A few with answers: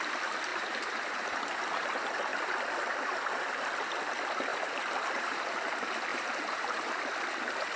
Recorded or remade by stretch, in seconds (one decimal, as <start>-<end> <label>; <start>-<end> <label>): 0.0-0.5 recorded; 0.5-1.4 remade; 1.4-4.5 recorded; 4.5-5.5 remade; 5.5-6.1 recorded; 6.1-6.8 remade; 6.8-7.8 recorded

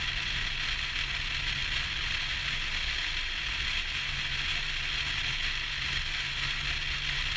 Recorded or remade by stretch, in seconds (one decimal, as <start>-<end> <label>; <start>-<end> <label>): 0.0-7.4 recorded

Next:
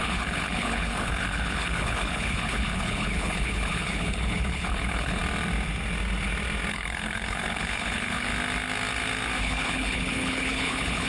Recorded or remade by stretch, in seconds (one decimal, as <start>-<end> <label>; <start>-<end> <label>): 0.0-5.2 remade; 5.2-6.7 recorded; 6.7-8.3 remade; 8.3-9.4 recorded; 9.4-11.1 remade